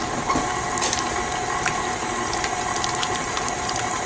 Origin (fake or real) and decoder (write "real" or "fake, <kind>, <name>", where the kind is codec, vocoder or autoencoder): fake, vocoder, BigVGAN v2